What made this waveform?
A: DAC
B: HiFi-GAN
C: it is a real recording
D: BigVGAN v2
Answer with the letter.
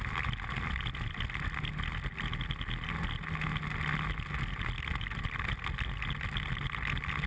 C